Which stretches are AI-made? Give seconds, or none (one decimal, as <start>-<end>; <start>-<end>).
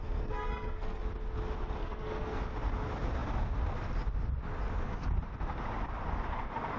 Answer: 0.0-1.0; 1.8-2.4